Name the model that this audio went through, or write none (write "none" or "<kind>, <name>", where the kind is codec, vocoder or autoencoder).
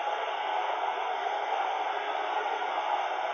codec, SNAC